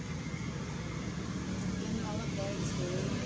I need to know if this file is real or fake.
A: real